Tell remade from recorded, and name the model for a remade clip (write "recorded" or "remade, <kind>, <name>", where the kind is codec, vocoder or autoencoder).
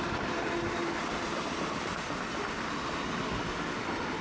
recorded